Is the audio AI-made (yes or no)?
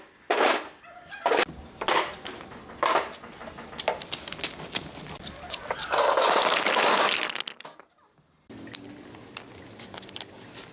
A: no